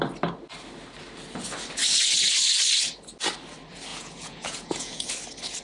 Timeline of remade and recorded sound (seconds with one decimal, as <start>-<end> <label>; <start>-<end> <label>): 0.0-3.9 recorded; 3.9-5.1 remade; 5.1-5.6 recorded